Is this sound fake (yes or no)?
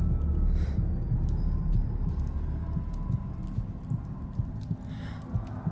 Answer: no